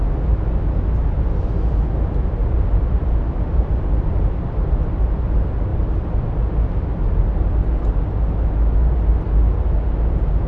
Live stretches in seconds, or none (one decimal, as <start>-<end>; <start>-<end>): 0.0-2.4; 4.8-5.7; 6.4-10.5